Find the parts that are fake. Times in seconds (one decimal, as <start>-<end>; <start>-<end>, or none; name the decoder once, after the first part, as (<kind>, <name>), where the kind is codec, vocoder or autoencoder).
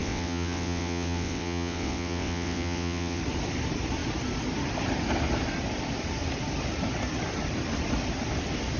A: 0.0-3.2 (vocoder, WaveNeXt)